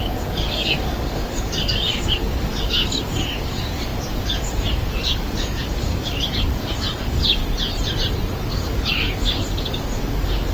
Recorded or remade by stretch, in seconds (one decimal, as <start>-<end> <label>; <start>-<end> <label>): 0.0-7.4 remade; 7.4-8.5 recorded; 8.5-10.5 remade